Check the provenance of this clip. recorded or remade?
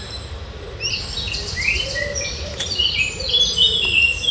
recorded